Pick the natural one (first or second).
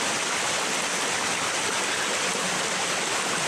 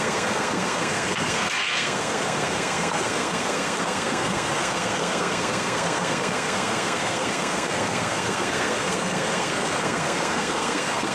first